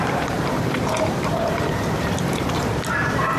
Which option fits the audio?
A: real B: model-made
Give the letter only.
B